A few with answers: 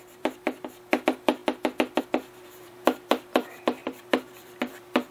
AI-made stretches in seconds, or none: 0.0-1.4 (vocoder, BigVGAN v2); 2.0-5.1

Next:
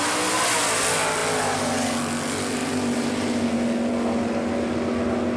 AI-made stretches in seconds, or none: none

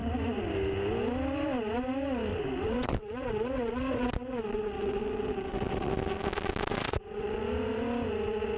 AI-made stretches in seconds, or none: 2.3-5.9 (vocoder, WaveNeXt); 6.7-7.4

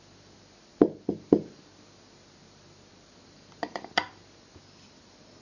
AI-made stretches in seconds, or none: none

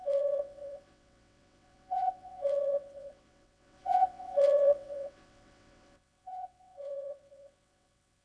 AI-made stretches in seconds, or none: 0.0-8.2 (vocoder, WaveNeXt)